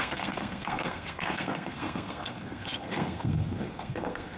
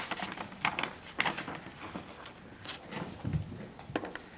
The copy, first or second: first